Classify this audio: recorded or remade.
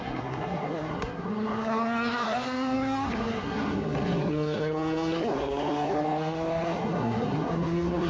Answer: remade